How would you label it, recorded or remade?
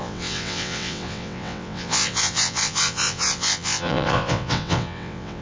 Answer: remade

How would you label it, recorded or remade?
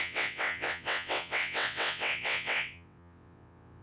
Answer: remade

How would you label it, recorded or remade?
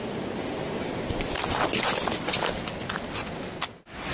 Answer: recorded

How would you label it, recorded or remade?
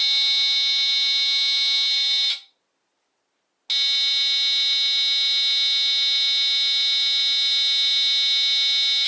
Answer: recorded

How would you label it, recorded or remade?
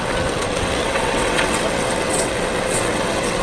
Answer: remade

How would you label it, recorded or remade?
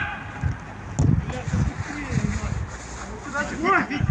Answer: recorded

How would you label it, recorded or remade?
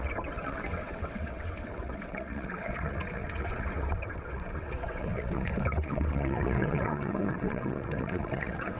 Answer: remade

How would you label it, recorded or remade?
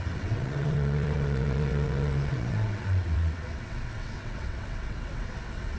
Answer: remade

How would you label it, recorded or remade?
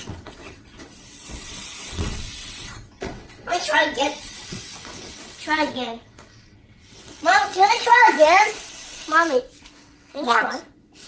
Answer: remade